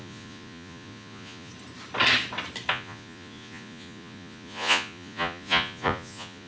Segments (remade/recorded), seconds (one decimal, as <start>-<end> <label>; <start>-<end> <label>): 0.0-1.5 remade; 1.5-2.7 recorded; 2.7-6.5 remade